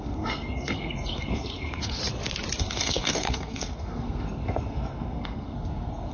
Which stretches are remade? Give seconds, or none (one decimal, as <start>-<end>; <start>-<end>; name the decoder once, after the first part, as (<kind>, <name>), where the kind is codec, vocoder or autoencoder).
0.0-2.0 (codec, SNAC); 2.6-6.1